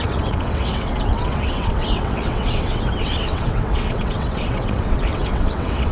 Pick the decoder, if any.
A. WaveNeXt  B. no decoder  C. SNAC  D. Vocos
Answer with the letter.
A